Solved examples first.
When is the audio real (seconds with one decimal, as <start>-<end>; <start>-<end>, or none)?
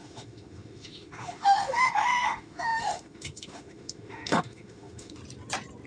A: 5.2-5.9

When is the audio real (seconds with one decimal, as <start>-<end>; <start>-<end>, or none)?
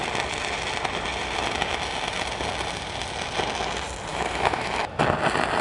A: 0.0-4.1; 5.0-5.6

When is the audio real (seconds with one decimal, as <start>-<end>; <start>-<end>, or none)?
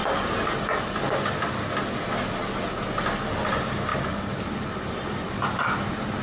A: 0.0-6.2